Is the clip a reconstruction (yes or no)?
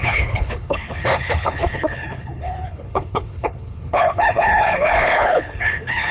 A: yes